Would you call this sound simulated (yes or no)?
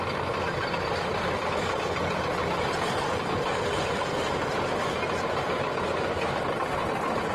no